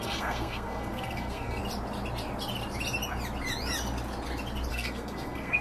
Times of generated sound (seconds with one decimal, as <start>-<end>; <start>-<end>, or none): 0.0-1.6; 4.7-5.6